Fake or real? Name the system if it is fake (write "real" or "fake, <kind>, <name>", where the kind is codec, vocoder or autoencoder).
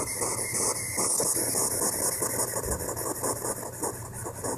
real